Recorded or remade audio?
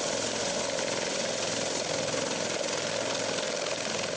recorded